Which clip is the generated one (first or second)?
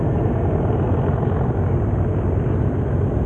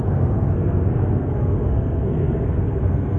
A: second